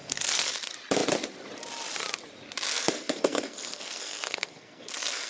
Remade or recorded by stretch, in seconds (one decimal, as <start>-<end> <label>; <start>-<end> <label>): 0.0-0.5 remade; 0.5-2.7 recorded; 2.7-5.3 remade